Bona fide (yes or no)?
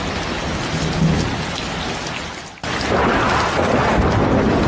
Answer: yes